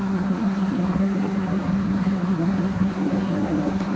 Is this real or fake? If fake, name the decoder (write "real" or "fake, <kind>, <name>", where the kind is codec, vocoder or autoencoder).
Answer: fake, codec, SNAC